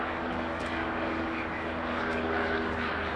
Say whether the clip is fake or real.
fake